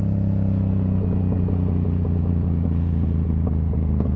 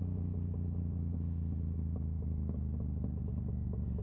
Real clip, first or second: second